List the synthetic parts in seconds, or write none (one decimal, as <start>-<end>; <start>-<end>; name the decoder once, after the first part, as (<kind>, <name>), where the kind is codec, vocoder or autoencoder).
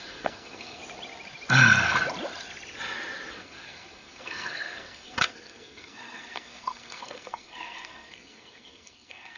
0.0-0.8 (codec, SNAC); 3.3-9.4